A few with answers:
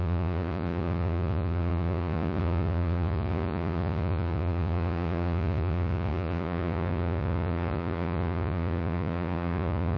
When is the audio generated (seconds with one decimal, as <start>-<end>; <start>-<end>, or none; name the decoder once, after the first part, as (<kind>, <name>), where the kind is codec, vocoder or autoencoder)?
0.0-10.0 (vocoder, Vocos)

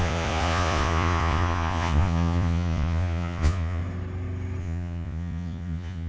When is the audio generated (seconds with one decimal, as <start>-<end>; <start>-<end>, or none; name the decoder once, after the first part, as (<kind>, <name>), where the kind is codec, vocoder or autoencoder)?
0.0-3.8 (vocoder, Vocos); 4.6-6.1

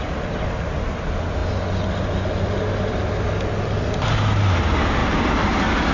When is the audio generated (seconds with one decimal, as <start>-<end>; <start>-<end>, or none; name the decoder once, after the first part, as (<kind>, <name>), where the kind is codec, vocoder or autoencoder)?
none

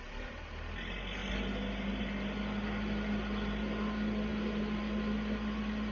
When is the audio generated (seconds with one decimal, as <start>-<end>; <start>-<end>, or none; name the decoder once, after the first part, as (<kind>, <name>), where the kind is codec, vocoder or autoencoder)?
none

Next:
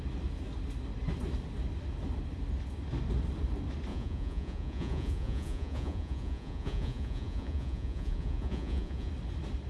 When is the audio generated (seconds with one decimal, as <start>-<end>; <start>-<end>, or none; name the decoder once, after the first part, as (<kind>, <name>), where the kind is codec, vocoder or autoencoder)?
3.9-9.1 (vocoder, Vocos)